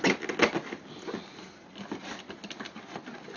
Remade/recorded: recorded